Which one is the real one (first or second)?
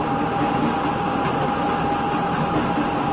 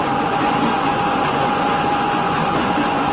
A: first